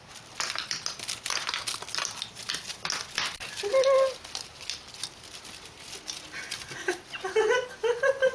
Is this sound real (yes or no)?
yes